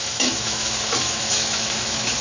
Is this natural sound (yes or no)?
no